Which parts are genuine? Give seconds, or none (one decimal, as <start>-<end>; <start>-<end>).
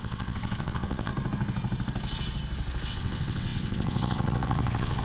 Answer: 1.1-2.9